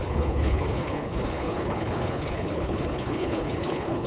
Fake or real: fake